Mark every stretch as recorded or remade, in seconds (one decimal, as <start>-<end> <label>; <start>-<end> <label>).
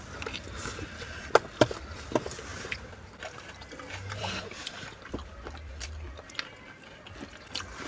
0.0-2.5 recorded; 2.5-5.4 remade; 5.4-7.9 recorded